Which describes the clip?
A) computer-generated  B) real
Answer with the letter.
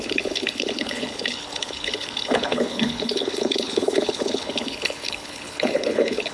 A